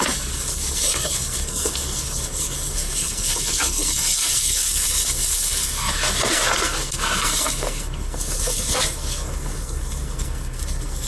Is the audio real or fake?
fake